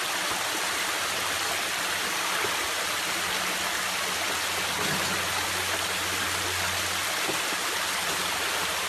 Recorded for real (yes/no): yes